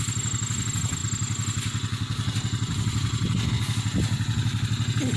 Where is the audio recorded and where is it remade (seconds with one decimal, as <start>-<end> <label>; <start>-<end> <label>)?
0.0-5.2 recorded